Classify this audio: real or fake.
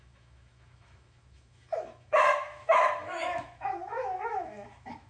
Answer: fake